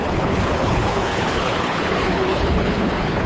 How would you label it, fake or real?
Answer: fake